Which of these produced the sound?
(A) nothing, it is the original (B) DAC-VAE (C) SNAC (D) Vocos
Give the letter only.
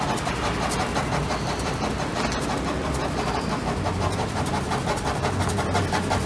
A